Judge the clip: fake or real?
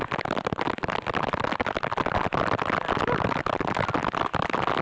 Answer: real